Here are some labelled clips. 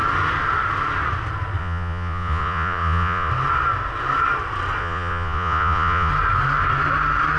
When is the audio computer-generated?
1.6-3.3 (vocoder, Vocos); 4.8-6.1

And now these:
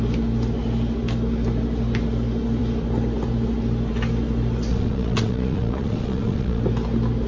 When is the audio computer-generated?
4.7-6.6 (vocoder, Vocos)